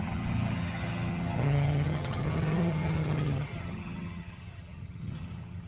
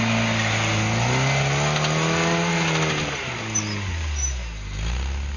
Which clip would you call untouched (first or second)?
second